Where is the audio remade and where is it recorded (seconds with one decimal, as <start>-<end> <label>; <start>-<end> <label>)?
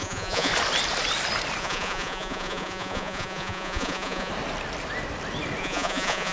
0.0-0.5 remade; 0.5-1.6 recorded; 1.6-4.3 remade; 4.3-5.6 recorded; 5.6-6.3 remade